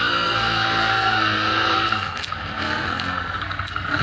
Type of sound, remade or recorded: remade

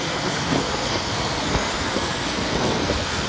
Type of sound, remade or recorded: remade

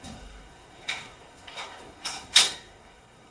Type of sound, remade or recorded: remade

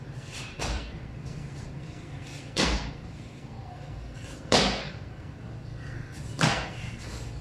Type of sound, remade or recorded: remade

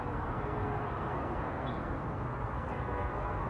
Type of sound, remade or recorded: remade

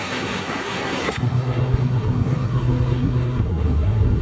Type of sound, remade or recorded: remade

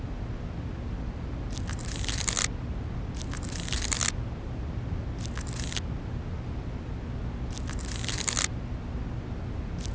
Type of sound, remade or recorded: recorded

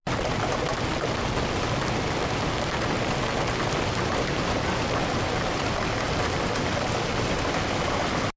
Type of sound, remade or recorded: recorded